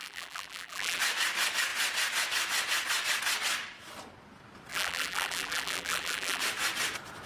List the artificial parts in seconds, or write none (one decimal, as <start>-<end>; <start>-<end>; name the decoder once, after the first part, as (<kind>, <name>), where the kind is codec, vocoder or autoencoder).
0.0-1.0 (vocoder, BigVGAN v2); 4.7-6.4

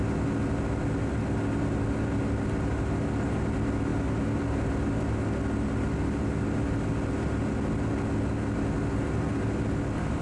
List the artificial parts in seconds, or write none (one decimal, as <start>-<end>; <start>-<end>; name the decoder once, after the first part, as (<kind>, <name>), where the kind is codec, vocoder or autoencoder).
none